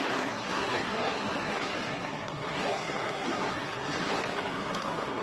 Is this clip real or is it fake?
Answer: fake